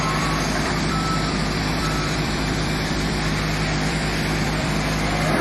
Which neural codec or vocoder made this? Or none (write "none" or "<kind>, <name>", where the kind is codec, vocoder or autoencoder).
vocoder, BigVGAN v2